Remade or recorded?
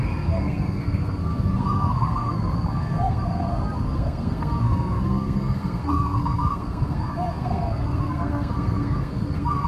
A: remade